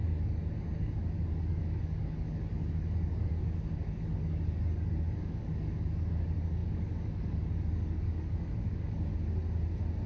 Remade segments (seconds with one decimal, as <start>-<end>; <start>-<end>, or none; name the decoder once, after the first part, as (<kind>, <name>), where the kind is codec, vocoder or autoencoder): 0.0-9.1 (codec, DAC)